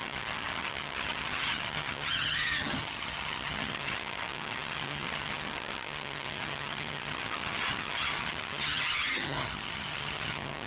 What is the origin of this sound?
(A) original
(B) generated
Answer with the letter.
B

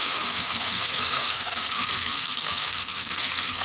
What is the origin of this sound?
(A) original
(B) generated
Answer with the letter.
B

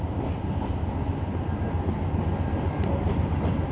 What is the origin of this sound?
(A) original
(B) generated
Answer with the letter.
A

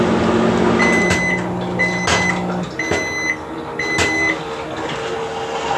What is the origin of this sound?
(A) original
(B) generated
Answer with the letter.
A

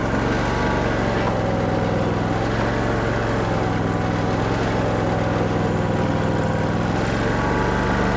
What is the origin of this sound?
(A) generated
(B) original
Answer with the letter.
B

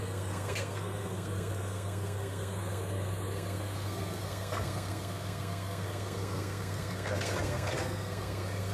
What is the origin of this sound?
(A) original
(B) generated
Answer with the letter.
B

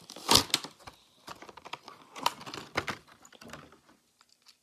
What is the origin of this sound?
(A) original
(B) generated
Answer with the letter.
A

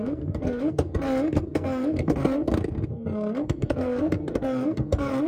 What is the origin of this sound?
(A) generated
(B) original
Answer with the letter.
A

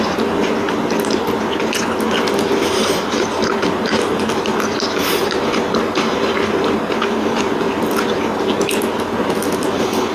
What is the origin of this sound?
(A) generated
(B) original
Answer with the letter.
B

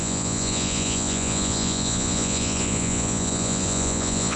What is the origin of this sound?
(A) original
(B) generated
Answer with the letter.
B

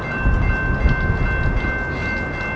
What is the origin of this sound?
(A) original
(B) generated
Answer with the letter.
A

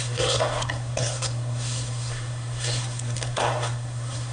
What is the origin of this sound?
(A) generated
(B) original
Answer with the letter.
A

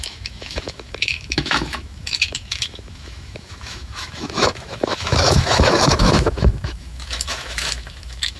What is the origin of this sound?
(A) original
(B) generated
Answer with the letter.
B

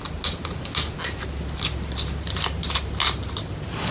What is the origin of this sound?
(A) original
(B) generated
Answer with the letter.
A